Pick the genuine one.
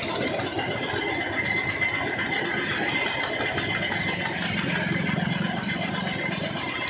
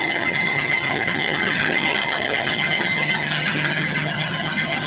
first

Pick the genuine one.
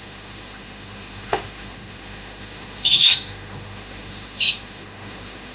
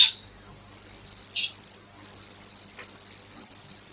second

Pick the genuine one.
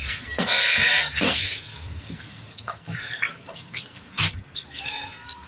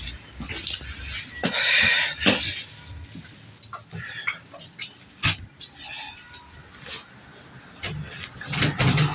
second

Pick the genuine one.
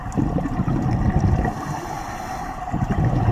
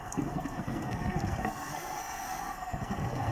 first